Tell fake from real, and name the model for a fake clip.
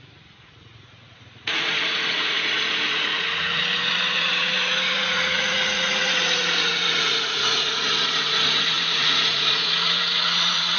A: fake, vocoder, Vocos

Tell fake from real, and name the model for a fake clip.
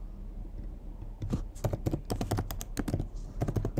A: real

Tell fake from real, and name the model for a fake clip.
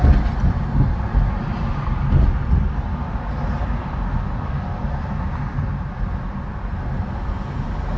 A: real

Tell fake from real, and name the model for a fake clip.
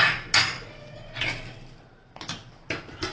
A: real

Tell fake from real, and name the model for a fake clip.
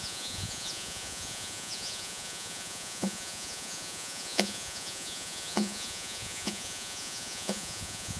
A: fake, vocoder, Vocos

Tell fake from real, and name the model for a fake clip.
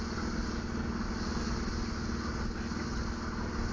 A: real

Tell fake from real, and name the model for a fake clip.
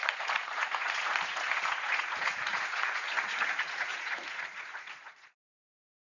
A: fake, vocoder, Vocos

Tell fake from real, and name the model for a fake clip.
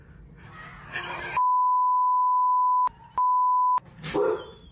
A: real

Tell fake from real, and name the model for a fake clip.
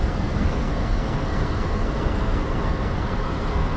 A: fake, codec, SNAC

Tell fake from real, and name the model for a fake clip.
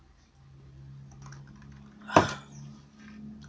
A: real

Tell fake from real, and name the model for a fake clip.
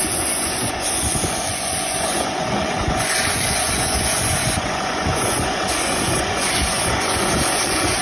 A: fake, vocoder, Vocos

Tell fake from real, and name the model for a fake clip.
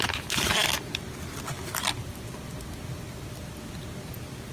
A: real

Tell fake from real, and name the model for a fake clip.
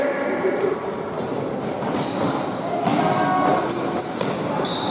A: real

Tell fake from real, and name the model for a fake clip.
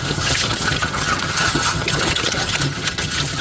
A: fake, vocoder, HiFi-GAN